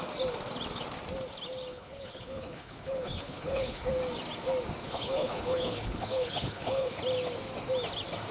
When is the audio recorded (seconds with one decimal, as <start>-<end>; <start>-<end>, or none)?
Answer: 0.0-1.7; 3.9-4.8; 7.0-8.3